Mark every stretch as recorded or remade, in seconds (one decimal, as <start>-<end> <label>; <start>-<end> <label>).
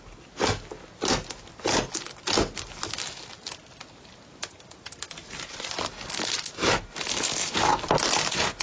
0.0-8.6 recorded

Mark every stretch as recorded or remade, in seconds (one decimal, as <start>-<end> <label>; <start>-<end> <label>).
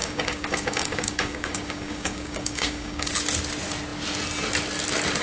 0.0-3.1 remade; 3.1-5.2 recorded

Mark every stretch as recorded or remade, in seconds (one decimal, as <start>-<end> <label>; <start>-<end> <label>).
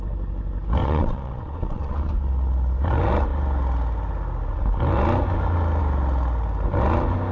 0.0-0.8 recorded; 0.8-2.1 remade; 2.1-7.3 recorded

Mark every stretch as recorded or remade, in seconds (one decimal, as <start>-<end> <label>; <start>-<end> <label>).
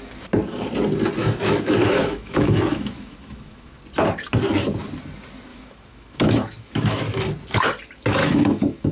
0.0-1.2 recorded; 1.2-3.8 remade; 3.8-5.5 recorded; 5.5-7.0 remade; 7.0-8.2 recorded; 8.2-8.9 remade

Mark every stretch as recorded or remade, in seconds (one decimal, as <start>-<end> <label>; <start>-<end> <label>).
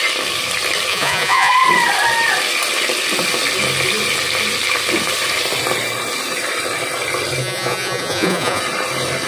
0.0-0.9 recorded; 0.9-1.5 remade; 1.5-7.4 recorded; 7.4-8.6 remade; 8.6-9.3 recorded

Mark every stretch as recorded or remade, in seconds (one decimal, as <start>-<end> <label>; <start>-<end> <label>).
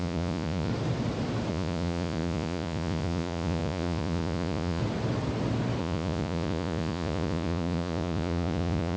0.0-0.7 remade; 0.7-1.5 recorded; 1.5-4.8 remade; 4.8-5.8 recorded; 5.8-9.0 remade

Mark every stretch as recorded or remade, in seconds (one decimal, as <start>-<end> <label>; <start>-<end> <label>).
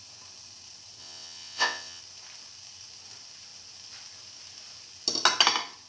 0.0-1.0 recorded; 1.0-2.0 remade; 2.0-5.9 recorded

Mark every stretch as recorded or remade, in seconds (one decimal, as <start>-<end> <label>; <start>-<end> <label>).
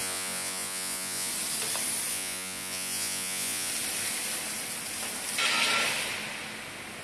0.0-1.3 remade; 1.3-2.1 recorded; 2.1-3.7 remade; 3.7-7.0 recorded